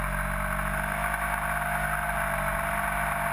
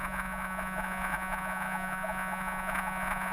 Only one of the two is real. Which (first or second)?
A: first